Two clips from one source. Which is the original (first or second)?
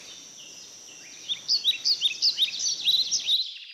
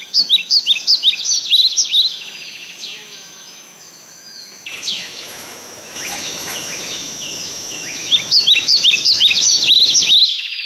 first